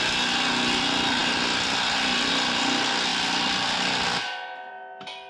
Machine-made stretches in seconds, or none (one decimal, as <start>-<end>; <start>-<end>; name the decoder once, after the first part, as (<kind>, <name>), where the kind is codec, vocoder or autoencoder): 3.1-4.7 (vocoder, BigVGAN v2)